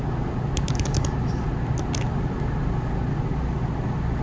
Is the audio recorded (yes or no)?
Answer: yes